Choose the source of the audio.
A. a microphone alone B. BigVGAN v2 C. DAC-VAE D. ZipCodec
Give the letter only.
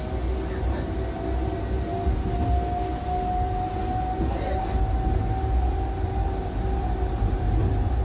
A